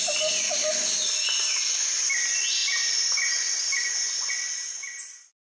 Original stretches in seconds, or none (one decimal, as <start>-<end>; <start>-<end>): 0.0-5.6